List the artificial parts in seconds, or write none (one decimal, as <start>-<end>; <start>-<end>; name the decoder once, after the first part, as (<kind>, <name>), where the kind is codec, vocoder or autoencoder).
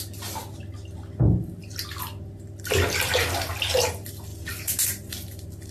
none